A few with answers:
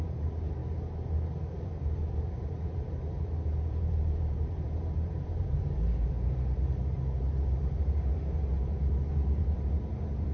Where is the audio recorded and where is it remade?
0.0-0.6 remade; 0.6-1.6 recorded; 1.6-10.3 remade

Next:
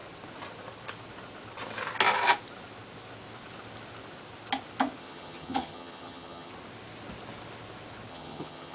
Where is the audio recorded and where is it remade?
0.0-5.0 recorded; 5.0-6.5 remade; 6.5-8.1 recorded; 8.1-8.7 remade

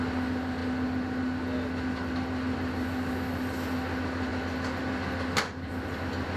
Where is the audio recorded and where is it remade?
0.0-6.4 recorded

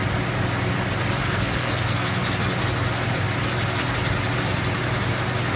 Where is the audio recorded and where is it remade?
0.0-1.2 recorded; 1.2-2.2 remade; 2.2-5.6 recorded

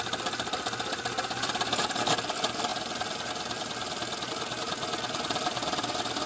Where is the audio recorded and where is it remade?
0.0-6.3 recorded

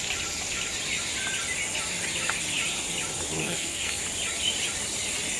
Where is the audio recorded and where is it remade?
0.0-3.4 recorded; 3.4-4.0 remade; 4.0-5.4 recorded